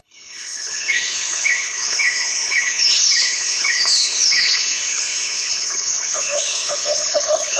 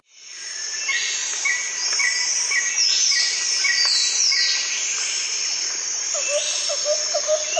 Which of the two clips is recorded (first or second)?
second